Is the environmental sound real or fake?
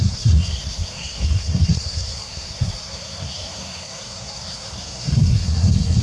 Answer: fake